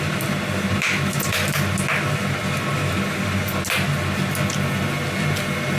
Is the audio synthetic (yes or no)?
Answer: no